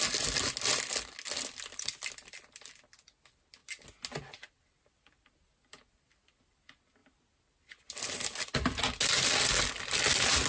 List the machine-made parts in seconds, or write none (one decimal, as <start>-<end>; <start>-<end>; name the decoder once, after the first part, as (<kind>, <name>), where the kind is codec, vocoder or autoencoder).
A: none